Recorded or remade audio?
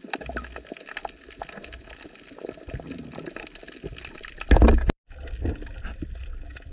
recorded